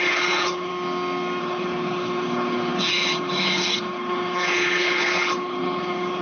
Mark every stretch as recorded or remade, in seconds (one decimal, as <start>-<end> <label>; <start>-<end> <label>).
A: 0.0-0.7 remade; 0.7-1.4 recorded; 1.4-6.2 remade